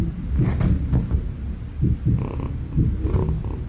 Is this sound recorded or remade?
recorded